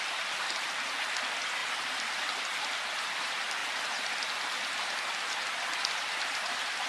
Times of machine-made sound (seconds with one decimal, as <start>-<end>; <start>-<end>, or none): 1.6-2.7